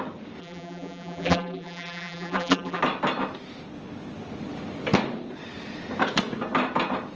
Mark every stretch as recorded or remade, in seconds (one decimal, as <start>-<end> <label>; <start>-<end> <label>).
0.0-0.4 recorded; 0.4-2.8 remade; 2.8-7.2 recorded